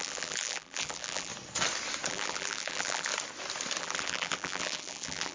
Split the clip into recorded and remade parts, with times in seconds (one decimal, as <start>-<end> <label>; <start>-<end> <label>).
0.0-1.3 remade; 1.3-2.1 recorded; 2.1-3.1 remade; 3.1-3.8 recorded; 3.8-5.3 remade